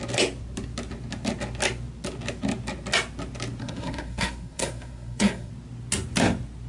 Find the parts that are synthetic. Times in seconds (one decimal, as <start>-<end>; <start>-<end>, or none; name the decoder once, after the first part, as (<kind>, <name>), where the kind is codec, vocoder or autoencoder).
3.6-5.5 (codec, SNAC)